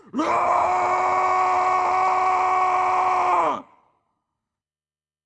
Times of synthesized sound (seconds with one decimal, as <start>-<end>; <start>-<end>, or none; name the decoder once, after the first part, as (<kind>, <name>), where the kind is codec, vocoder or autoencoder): 0.0-0.7 (codec, HILCodec); 3.3-5.3